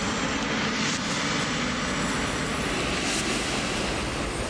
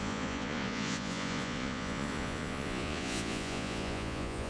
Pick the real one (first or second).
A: first